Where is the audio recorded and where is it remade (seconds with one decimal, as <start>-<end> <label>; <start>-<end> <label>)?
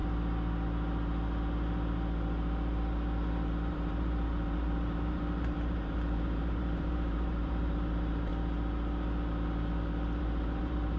0.0-3.7 recorded; 3.7-8.3 remade; 8.3-10.2 recorded; 10.2-11.0 remade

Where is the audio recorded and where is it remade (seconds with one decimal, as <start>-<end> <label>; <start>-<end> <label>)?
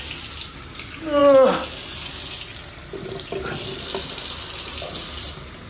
0.0-5.7 recorded